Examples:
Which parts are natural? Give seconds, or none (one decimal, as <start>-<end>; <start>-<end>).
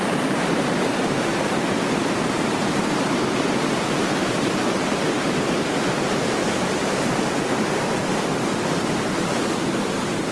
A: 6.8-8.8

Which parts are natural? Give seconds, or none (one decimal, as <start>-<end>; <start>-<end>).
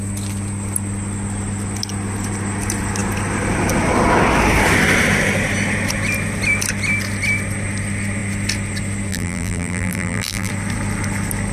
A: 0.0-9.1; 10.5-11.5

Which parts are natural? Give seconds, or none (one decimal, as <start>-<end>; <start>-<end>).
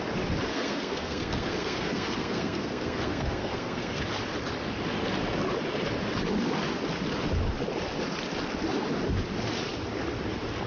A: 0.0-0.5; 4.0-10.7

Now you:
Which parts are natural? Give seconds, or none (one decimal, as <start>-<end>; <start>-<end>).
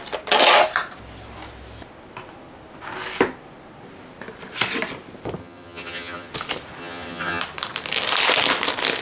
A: 0.0-5.4; 6.3-6.8; 7.4-9.0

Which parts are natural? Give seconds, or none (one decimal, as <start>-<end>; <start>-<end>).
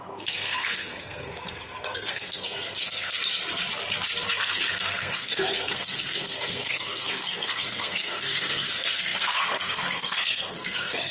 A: 3.2-4.3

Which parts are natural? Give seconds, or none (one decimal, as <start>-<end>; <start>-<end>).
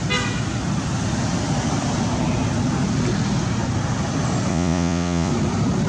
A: 0.0-4.5; 5.3-5.9